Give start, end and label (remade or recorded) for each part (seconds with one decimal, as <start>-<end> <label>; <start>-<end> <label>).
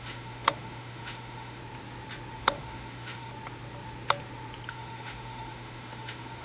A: 0.0-1.6 remade; 1.6-2.4 recorded; 2.4-3.3 remade; 3.3-4.7 recorded; 4.7-6.4 remade